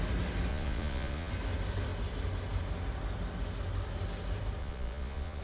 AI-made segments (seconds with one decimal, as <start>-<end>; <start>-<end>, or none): 0.5-1.3; 4.6-5.4